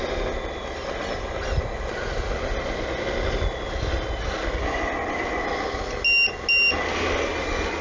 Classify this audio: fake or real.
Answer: real